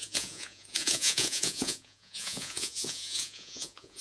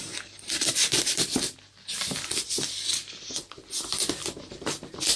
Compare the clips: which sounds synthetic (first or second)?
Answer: first